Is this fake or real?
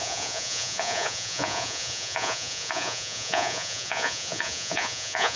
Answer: fake